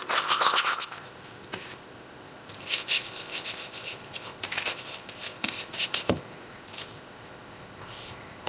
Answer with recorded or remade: remade